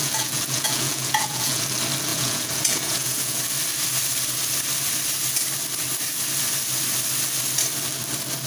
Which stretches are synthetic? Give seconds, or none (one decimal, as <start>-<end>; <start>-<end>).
0.0-1.6; 2.1-3.4